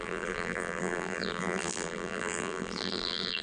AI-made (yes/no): yes